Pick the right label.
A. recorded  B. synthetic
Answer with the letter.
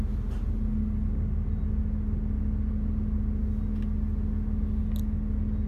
A